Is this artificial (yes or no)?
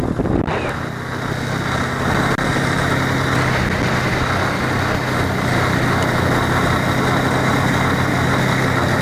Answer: no